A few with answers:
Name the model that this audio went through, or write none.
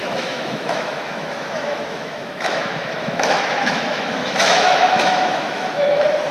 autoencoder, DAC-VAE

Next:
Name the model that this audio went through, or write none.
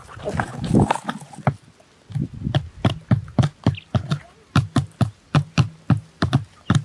none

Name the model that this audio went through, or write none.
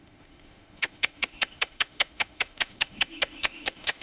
autoencoder, DAC-VAE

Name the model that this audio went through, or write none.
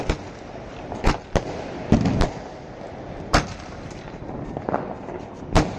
none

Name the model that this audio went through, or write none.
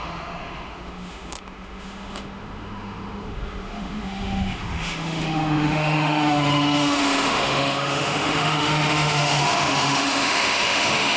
autoencoder, DAC-VAE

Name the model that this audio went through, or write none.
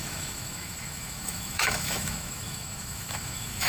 autoencoder, DAC-VAE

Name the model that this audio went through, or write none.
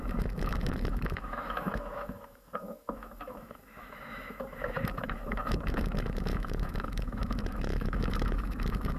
autoencoder, DAC-VAE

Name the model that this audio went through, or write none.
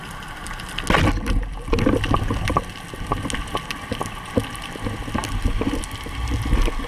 none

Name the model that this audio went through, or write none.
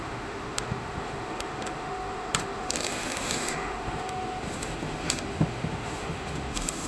autoencoder, DAC-VAE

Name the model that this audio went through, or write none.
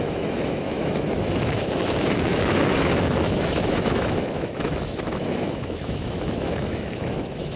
autoencoder, DAC-VAE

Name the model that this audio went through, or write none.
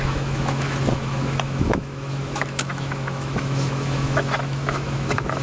autoencoder, DAC-VAE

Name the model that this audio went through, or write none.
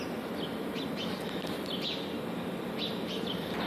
none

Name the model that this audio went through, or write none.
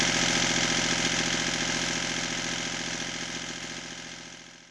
none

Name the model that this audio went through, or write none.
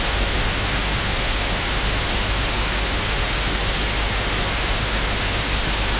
autoencoder, DAC-VAE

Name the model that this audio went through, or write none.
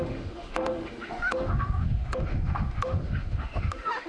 autoencoder, DAC-VAE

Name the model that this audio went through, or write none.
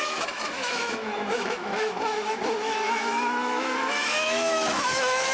autoencoder, DAC-VAE